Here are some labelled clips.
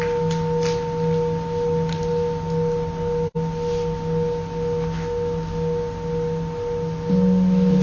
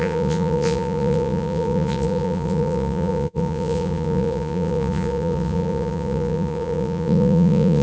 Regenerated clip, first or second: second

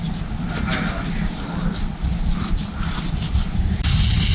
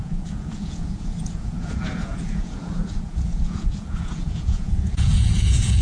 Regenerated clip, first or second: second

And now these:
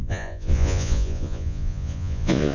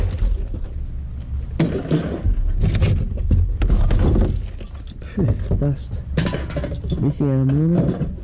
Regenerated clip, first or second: first